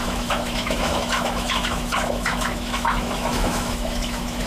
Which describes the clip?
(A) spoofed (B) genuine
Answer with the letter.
A